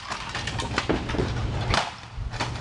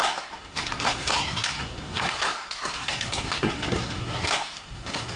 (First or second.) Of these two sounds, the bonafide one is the first